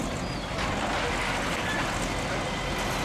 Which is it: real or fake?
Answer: real